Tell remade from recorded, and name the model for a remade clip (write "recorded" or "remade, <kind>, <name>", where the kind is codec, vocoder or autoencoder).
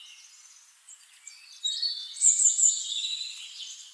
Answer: recorded